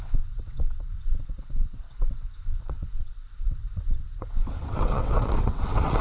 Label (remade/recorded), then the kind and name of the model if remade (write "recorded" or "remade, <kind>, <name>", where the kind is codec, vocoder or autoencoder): remade, vocoder, WaveNeXt